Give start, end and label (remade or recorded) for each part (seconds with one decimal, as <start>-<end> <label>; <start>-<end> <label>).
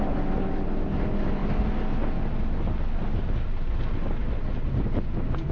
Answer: 0.0-5.5 recorded